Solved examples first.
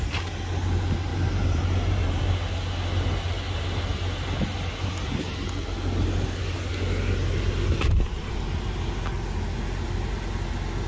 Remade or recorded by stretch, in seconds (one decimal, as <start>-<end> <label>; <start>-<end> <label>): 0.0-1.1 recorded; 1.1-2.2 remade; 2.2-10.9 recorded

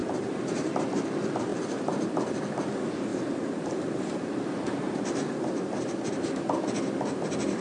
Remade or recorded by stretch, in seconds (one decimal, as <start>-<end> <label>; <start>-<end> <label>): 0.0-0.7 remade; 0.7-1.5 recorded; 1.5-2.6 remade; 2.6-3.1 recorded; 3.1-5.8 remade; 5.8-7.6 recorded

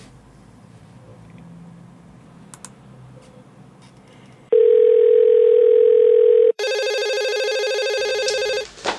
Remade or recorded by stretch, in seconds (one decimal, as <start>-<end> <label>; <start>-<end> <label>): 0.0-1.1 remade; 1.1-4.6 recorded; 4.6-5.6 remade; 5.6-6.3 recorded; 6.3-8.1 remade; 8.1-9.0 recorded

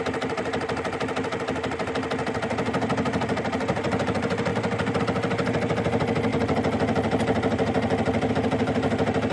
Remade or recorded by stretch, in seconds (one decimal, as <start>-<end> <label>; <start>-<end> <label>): 0.0-9.3 recorded

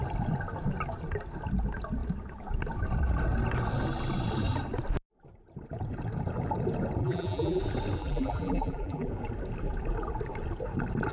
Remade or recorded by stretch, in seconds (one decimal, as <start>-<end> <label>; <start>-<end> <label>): 0.0-7.0 recorded; 7.0-7.6 remade; 7.6-8.0 recorded; 8.0-9.1 remade; 9.1-11.1 recorded

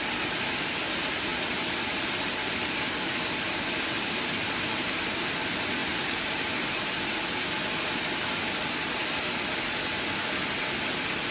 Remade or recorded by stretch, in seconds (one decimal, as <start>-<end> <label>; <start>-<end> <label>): 0.0-1.3 recorded; 1.3-5.0 remade; 5.0-5.8 recorded; 5.8-6.5 remade; 6.5-11.3 recorded